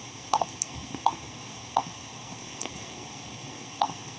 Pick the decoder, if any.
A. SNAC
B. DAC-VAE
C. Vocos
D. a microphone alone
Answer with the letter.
A